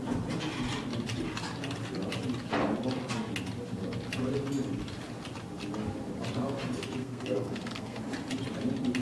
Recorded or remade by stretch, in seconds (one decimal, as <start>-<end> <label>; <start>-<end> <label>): 0.0-7.0 recorded; 7.0-8.0 remade; 8.0-9.0 recorded